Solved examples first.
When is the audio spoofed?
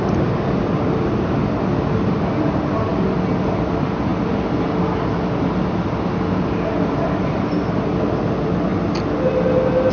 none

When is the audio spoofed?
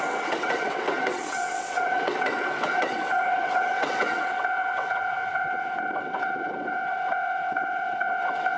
0.0-8.6 (vocoder, WaveNeXt)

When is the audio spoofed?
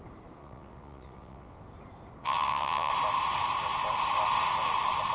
0.4-1.6 (vocoder, WaveNeXt); 2.2-2.9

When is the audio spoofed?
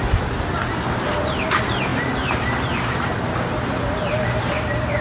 none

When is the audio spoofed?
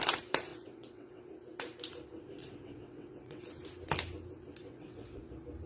0.5-1.2 (vocoder, WaveNeXt); 2.4-3.4; 4.6-5.2